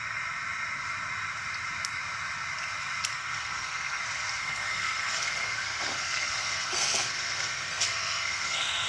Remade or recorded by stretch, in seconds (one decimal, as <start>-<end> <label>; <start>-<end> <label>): 0.0-3.1 recorded; 3.1-4.0 remade; 4.0-4.4 recorded; 4.4-8.9 remade